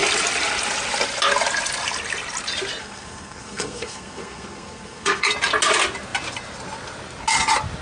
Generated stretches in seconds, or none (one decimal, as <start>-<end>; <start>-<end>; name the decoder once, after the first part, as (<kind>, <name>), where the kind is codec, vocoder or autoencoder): 2.8-5.3 (codec, SNAC)